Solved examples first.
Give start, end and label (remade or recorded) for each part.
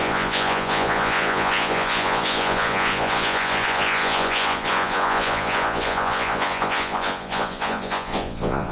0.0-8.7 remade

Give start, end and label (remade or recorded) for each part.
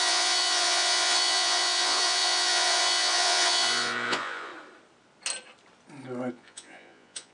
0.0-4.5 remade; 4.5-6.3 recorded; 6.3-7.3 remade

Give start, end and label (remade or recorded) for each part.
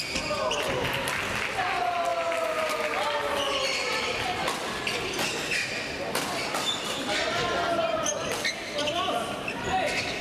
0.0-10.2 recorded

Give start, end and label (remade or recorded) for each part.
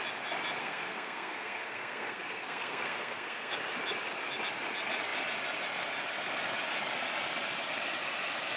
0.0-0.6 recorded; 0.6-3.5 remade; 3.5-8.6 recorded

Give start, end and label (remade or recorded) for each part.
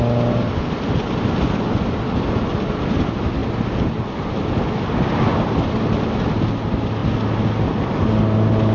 0.0-8.7 recorded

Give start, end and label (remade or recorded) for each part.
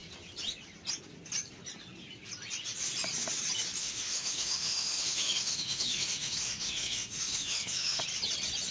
0.0-3.8 recorded; 3.8-8.0 remade; 8.0-8.7 recorded